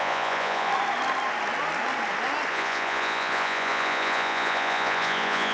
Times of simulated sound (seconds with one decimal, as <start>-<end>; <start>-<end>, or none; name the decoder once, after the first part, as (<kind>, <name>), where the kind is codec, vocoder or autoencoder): 0.0-0.7 (vocoder, Vocos); 2.5-5.5

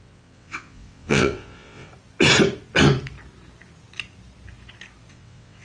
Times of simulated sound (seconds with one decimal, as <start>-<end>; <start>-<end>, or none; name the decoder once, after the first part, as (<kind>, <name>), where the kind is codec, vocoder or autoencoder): 0.0-1.9 (vocoder, WaveNeXt); 5.1-5.6